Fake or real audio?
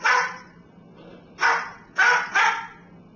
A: real